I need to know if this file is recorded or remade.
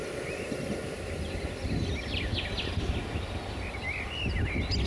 recorded